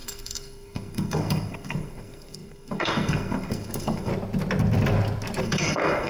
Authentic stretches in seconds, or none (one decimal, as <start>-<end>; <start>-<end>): 4.1-5.4